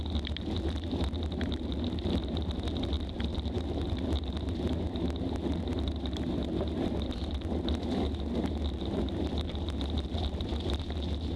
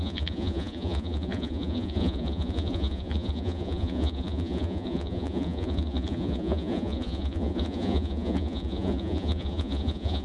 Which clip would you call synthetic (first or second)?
second